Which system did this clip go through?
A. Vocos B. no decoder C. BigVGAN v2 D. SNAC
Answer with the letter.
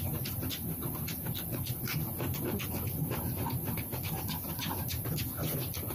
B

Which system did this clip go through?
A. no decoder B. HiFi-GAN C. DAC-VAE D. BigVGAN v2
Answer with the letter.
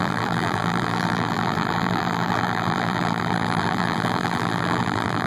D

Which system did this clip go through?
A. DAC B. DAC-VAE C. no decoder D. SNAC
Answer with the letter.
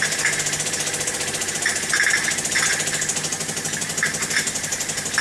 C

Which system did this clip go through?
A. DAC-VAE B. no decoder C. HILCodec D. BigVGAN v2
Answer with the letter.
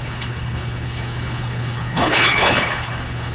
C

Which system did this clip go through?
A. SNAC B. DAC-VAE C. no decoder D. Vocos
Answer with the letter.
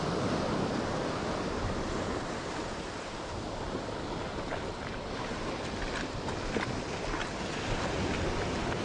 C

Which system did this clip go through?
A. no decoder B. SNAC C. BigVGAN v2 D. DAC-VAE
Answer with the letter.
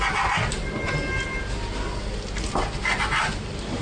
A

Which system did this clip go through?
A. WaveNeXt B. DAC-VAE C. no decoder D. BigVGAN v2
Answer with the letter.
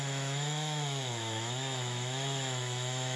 B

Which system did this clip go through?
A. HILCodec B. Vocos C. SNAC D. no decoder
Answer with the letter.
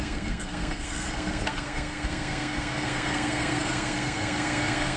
C